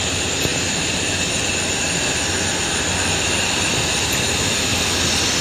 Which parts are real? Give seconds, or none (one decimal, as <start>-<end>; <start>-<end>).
0.0-4.7